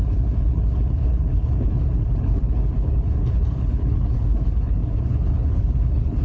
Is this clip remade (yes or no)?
yes